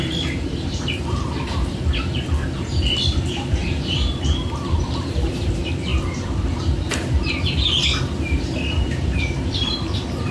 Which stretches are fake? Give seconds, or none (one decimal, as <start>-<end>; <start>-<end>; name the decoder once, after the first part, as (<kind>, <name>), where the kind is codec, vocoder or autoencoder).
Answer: 0.0-10.3 (vocoder, BigVGAN v2)